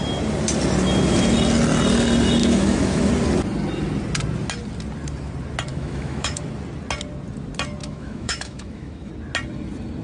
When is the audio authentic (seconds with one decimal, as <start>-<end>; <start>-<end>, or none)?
0.0-2.4; 3.1-5.7; 6.4-7.8; 9.1-10.0